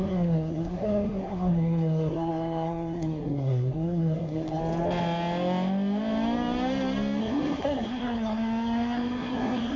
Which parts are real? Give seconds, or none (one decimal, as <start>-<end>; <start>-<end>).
4.6-7.2